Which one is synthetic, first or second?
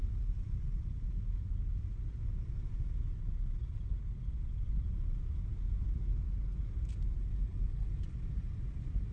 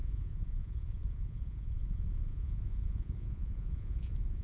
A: second